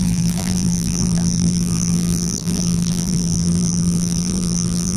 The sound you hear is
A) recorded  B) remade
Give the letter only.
B